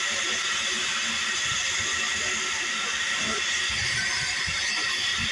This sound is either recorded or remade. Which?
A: recorded